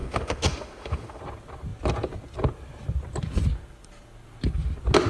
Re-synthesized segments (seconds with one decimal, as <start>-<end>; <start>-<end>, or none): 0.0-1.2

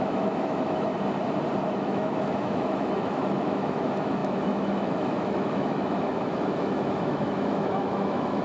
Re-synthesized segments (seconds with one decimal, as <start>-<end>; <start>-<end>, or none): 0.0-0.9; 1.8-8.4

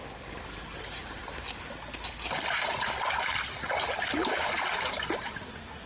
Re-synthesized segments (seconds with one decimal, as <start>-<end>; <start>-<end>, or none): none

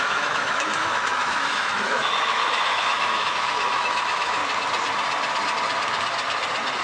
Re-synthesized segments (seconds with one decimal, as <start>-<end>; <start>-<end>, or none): 0.0-4.4

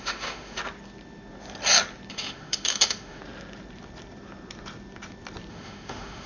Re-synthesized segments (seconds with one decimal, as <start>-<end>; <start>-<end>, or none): 0.0-0.6; 2.1-3.2; 5.5-6.3